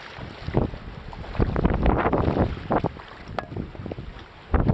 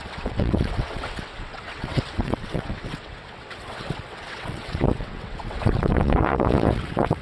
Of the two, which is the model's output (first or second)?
second